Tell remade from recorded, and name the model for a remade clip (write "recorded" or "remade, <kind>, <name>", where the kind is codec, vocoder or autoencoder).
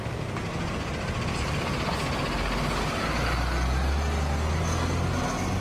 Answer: recorded